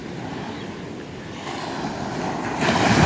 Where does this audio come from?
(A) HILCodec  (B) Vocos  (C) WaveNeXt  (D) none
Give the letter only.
D